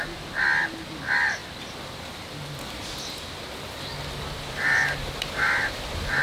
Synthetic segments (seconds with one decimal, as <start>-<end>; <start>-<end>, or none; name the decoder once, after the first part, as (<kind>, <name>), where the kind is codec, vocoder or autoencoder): none